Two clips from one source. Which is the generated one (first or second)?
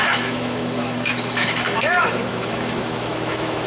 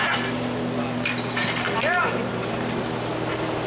first